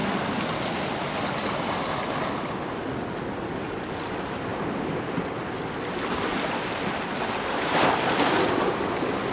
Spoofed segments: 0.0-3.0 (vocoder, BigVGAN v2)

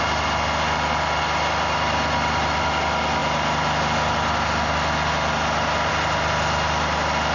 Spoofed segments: none